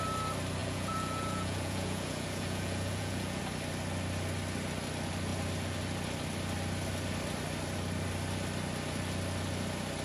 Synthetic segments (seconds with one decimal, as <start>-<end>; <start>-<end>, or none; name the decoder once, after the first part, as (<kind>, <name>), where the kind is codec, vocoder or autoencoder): 0.6-3.4 (vocoder, Vocos)